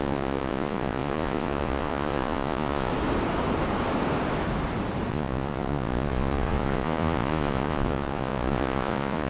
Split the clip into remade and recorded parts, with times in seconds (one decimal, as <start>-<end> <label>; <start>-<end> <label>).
0.0-2.9 remade; 2.9-5.1 recorded; 5.1-9.3 remade